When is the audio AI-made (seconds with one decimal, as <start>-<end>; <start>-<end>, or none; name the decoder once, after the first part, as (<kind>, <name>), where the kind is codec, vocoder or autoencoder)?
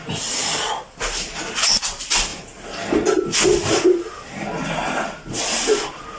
none